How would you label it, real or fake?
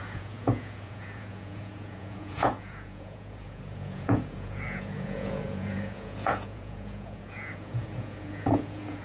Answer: fake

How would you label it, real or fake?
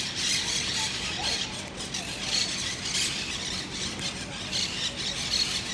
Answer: real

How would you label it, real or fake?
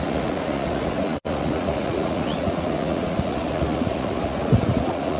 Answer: fake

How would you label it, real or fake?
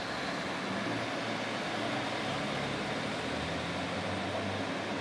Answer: real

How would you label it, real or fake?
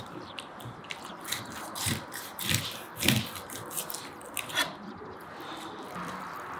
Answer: fake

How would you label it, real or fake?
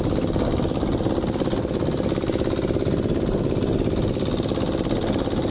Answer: real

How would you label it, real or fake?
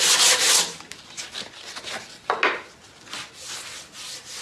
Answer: real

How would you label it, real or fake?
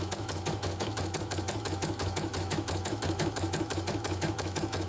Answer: fake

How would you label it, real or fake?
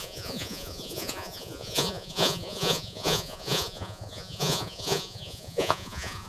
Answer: fake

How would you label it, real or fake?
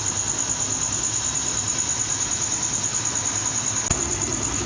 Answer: real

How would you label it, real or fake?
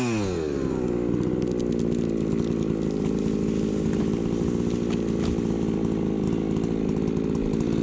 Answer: real